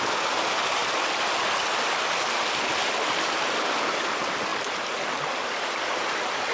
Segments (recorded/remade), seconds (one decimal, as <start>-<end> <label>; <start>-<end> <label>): 0.0-6.5 recorded